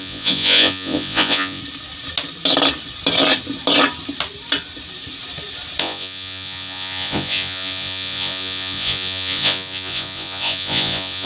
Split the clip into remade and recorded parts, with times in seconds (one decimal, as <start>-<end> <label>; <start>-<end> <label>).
0.0-1.6 remade; 1.6-5.8 recorded; 5.8-11.3 remade